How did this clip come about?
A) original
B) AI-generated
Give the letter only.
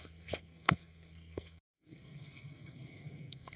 B